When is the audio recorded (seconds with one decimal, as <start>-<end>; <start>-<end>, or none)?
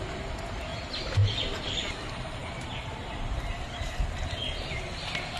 0.0-5.4